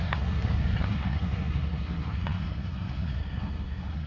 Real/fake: fake